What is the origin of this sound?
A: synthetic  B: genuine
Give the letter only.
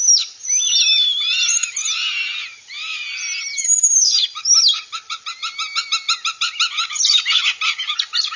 B